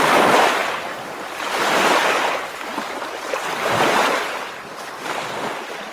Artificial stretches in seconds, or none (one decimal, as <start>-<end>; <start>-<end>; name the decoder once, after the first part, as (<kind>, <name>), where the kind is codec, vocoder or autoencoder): none